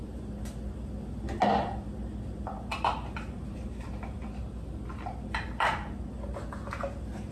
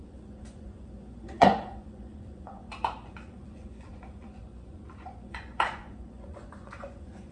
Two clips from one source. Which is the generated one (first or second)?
second